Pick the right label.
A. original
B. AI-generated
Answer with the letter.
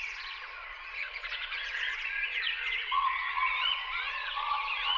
B